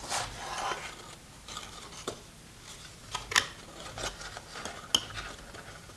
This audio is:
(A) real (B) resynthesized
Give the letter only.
A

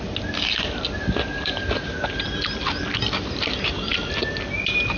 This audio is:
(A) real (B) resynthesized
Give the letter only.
A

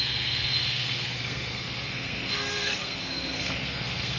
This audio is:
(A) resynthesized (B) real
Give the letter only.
A